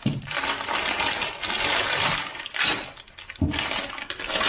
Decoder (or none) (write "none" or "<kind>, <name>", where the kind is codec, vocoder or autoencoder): none